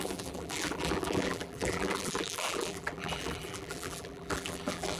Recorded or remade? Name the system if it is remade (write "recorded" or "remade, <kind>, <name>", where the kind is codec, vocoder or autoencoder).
remade, vocoder, BigVGAN v2